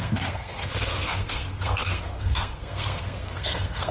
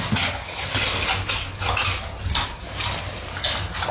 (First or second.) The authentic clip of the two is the second